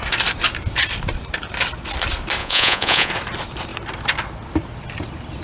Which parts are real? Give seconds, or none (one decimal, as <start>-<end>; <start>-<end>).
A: 0.0-2.4; 3.1-5.4